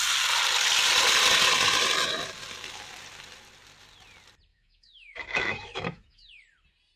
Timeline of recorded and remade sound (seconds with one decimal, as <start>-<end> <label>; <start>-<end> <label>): 0.0-4.5 recorded; 4.5-6.3 remade; 6.3-7.0 recorded